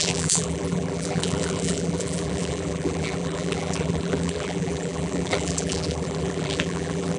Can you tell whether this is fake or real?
fake